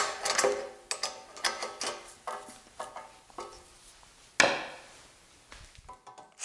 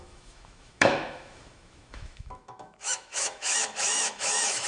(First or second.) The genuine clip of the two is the first